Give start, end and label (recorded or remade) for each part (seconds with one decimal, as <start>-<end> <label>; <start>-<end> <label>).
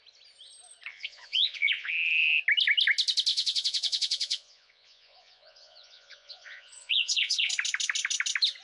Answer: 0.0-0.9 recorded; 0.9-1.9 remade; 1.9-3.3 recorded; 3.3-7.5 remade; 7.5-8.6 recorded